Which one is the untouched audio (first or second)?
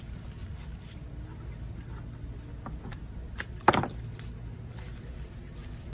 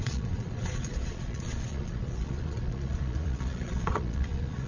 first